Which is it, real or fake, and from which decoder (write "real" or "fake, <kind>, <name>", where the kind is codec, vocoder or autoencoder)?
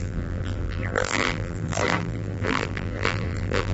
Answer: fake, vocoder, BigVGAN v2